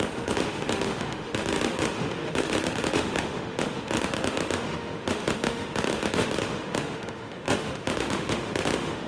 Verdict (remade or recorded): remade